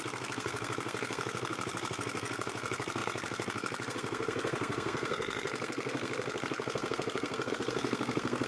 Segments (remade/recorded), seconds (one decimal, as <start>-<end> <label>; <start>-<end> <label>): 0.0-8.5 remade